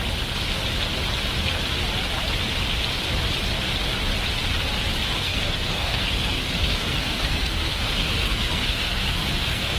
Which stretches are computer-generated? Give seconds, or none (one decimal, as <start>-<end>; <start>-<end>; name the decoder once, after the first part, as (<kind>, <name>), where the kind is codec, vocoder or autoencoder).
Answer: 5.0-9.8 (codec, SNAC)